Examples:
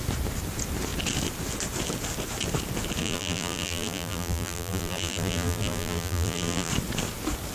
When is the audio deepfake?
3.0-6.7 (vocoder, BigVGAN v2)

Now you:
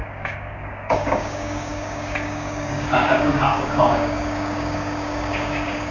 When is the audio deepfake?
0.0-5.9 (codec, DAC)

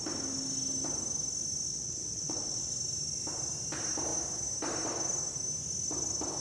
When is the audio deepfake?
1.7-2.7 (vocoder, WaveNeXt)

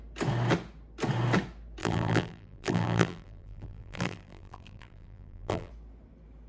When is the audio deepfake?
1.8-5.7 (vocoder, BigVGAN v2)

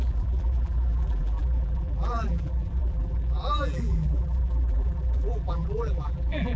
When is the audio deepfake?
0.0-6.6 (vocoder, BigVGAN v2)